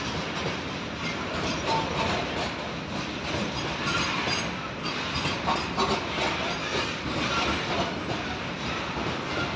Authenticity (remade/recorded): recorded